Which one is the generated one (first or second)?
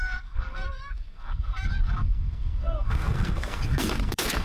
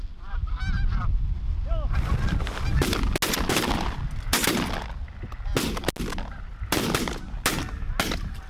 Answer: first